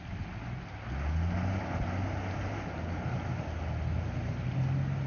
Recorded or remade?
recorded